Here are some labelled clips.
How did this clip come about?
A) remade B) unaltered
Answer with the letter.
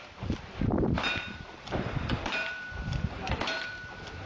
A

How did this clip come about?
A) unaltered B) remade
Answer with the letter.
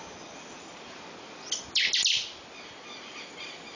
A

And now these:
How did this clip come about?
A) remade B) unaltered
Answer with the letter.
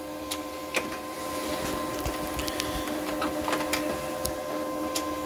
B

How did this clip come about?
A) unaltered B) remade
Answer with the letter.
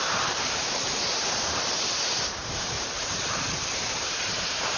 B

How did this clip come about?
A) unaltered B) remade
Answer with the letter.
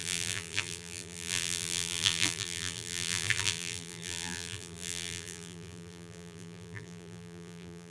B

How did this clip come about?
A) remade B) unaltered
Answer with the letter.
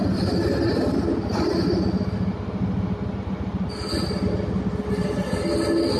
B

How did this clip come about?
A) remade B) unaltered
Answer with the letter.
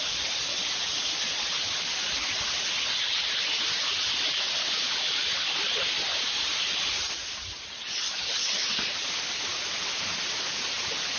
B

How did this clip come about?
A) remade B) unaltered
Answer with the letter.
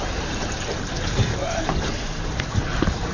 A